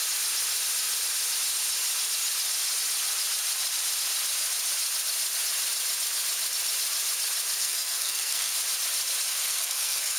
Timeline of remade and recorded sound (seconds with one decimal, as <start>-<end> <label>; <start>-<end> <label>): 0.0-7.6 recorded; 7.6-8.5 remade; 8.5-9.3 recorded; 9.3-10.2 remade